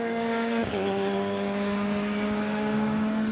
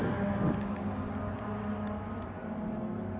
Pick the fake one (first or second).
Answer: first